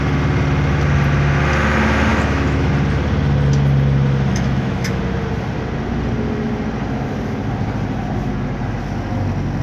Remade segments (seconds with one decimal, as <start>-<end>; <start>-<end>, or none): 2.1-2.7; 4.3-5.0